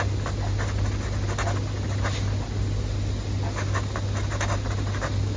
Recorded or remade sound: recorded